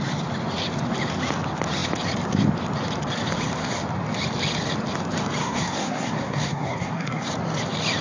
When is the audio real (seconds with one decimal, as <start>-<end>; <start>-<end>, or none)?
0.0-5.4; 7.3-8.0